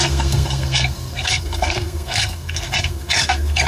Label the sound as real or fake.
fake